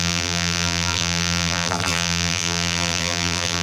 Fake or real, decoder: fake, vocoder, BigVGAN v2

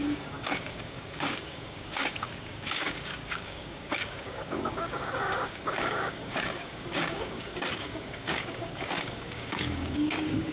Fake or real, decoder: fake, codec, DAC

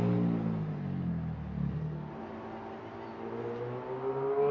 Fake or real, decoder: real